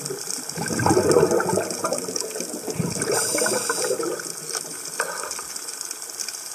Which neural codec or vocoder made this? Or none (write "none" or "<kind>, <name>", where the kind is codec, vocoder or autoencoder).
none